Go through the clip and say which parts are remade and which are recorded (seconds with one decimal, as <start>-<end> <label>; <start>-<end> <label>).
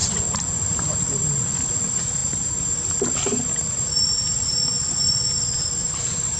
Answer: 0.0-0.5 recorded; 0.5-6.4 remade